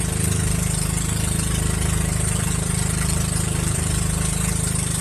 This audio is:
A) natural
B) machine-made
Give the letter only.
B